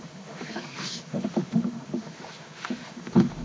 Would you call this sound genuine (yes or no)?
no